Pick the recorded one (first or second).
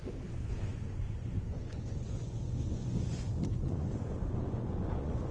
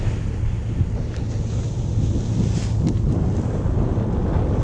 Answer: second